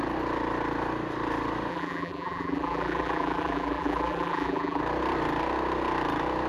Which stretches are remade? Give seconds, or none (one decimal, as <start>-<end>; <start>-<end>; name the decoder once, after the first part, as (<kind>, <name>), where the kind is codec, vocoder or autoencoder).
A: 1.7-4.8 (vocoder, BigVGAN v2)